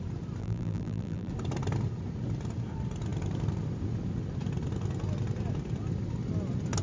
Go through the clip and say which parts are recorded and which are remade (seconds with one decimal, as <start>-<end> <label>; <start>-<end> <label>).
0.0-0.4 recorded; 0.4-1.3 remade; 1.3-6.8 recorded